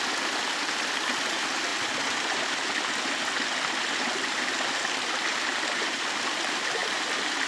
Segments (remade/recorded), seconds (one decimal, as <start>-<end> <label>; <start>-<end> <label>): 0.0-7.5 recorded